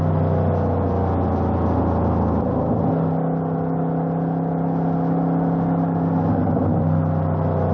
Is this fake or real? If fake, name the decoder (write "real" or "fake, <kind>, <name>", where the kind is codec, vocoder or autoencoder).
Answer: real